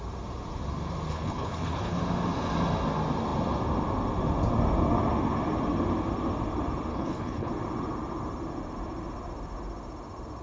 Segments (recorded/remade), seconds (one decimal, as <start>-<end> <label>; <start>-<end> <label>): 0.0-1.1 recorded; 1.1-2.0 remade; 2.0-6.9 recorded; 6.9-7.5 remade; 7.5-10.4 recorded